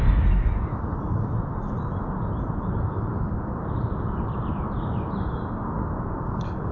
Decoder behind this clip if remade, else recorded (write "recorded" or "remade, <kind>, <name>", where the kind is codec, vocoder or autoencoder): recorded